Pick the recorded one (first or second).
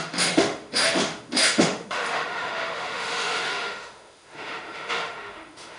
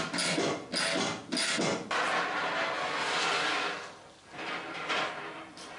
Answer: second